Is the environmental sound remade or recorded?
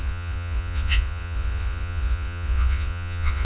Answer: remade